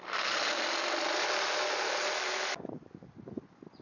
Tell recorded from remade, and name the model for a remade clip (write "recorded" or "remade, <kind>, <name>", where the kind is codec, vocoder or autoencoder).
recorded